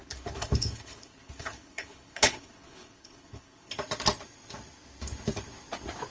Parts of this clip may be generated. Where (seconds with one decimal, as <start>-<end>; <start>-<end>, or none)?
0.0-3.7